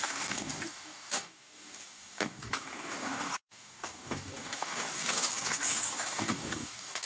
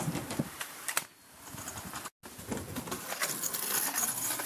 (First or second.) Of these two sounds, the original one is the second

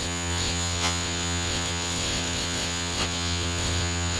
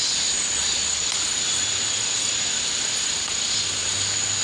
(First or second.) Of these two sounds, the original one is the second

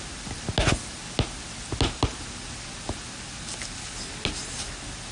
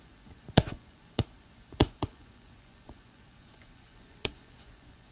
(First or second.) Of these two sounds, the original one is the first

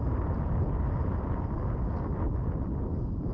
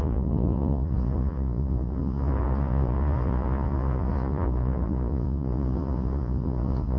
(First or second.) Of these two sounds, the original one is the first